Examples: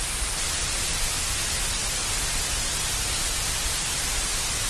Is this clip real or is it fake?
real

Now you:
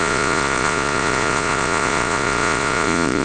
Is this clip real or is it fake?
fake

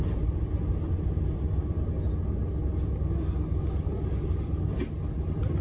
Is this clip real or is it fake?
real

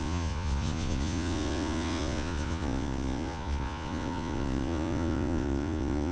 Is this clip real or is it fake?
fake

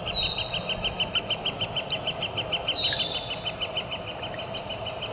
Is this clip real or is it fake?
real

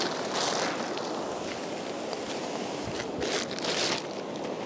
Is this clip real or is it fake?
real